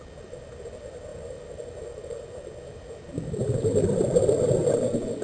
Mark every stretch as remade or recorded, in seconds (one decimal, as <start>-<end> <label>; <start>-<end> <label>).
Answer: 0.0-3.4 recorded; 3.4-5.2 remade